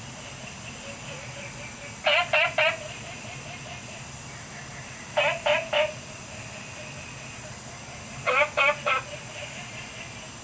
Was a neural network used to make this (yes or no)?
no